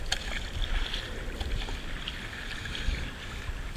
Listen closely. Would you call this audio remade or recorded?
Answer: recorded